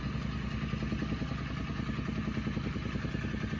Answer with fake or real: real